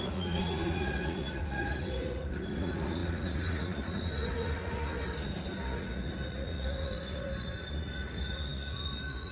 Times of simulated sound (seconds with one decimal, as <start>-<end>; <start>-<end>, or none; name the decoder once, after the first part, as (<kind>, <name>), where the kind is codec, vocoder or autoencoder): 0.0-9.3 (vocoder, Vocos)